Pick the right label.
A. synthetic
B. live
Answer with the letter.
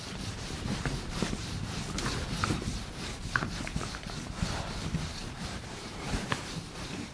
A